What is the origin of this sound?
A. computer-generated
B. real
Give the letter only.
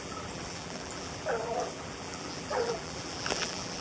A